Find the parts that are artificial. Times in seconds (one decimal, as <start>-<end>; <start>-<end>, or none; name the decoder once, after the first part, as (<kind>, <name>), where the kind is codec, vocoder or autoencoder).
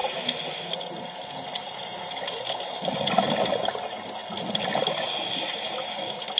none